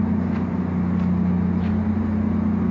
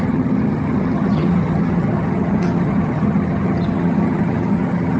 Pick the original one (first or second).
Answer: first